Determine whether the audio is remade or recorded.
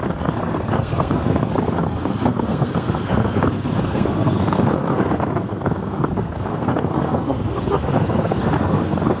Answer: remade